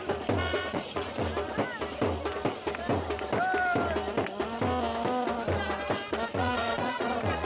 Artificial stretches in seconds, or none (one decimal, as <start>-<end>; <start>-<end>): 0.4-1.2; 6.3-7.5